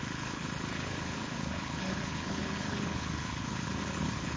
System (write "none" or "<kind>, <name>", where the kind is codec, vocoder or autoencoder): codec, HILCodec